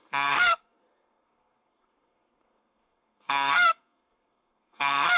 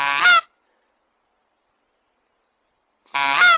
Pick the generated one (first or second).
first